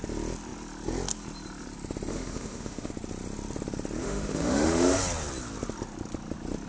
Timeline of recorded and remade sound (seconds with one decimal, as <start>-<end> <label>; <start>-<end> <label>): 0.0-2.1 recorded; 2.1-2.9 remade; 2.9-4.0 recorded; 4.0-5.0 remade; 5.0-6.7 recorded